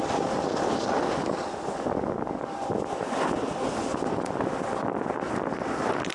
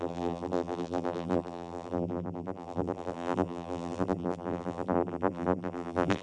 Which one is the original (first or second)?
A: first